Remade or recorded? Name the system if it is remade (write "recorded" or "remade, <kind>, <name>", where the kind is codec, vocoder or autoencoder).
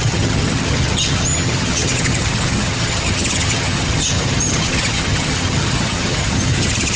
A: remade, vocoder, HiFi-GAN